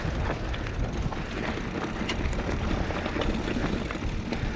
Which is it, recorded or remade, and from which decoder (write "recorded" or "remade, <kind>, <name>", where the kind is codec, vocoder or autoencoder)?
recorded